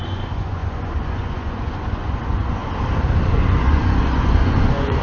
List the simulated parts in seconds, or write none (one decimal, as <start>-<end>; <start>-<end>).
0.0-2.6; 3.3-5.0